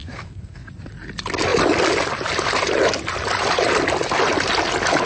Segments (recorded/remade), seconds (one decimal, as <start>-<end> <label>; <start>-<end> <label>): 0.0-0.7 remade; 0.7-5.1 recorded